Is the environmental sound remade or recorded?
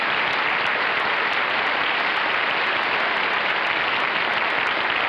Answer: recorded